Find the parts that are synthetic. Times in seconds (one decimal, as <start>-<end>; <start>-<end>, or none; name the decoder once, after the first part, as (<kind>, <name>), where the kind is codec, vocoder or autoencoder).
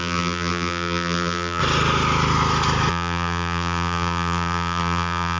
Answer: 0.0-1.6 (vocoder, BigVGAN v2); 2.9-5.4